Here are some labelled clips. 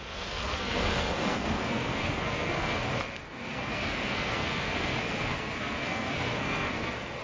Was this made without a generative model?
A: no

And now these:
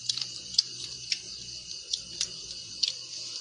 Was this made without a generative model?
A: no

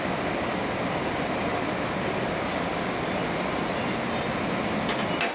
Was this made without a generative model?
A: yes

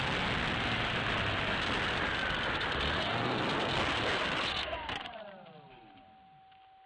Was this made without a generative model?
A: yes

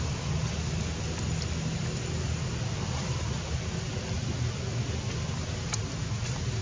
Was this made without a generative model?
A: yes